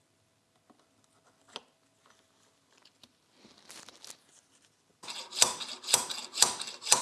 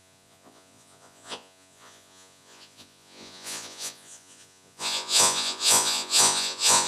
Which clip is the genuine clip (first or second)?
first